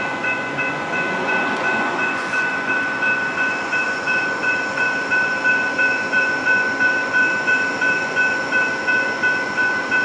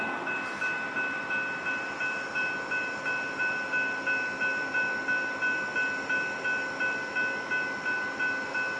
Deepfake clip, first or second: first